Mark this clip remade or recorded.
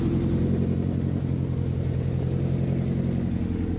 recorded